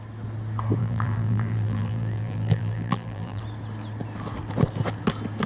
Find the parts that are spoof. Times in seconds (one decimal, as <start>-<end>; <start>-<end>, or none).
0.8-3.4